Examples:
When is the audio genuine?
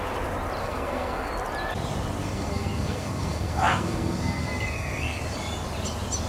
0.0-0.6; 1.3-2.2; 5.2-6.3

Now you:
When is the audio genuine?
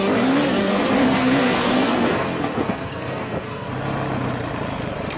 0.0-0.6; 3.7-5.2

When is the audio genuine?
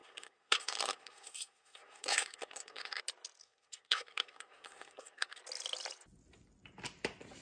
3.0-3.4; 5.4-7.4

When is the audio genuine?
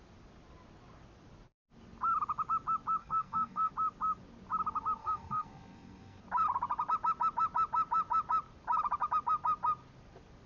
0.0-3.0; 3.7-5.0; 6.2-10.5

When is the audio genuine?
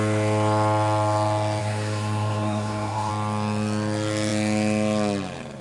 0.0-1.6; 3.1-5.6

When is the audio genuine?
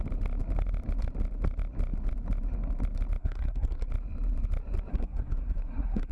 0.0-3.2; 3.9-4.9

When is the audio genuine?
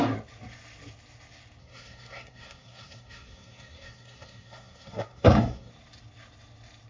0.0-1.6; 5.7-6.9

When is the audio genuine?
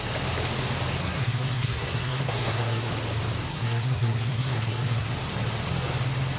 0.0-1.0; 2.9-3.5; 5.1-6.4